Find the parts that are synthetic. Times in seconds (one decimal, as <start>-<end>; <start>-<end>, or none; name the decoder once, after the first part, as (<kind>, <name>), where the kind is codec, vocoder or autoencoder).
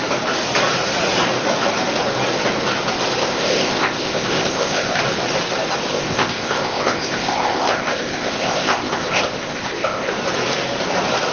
3.2-5.0 (codec, ZipCodec); 5.9-10.1